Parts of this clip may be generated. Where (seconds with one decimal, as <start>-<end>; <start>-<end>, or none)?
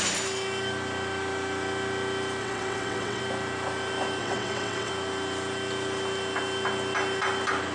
2.4-3.2; 4.2-4.9